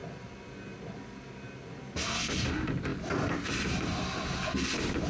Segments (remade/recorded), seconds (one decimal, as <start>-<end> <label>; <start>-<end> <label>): 0.0-2.9 recorded; 2.9-3.6 remade; 3.6-5.1 recorded

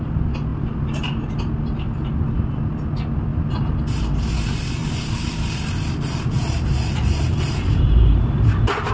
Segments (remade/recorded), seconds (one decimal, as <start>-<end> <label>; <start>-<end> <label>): 0.0-0.5 recorded; 0.5-1.2 remade; 1.2-3.3 recorded; 3.3-4.0 remade; 4.0-4.8 recorded; 4.8-8.9 remade

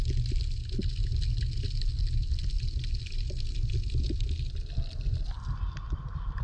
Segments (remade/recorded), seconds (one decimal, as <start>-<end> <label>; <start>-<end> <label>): 0.0-6.4 recorded